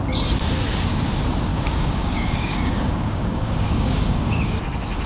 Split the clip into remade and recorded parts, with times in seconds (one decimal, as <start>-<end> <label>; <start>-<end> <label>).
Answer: 0.0-1.5 recorded; 1.5-4.6 remade; 4.6-5.1 recorded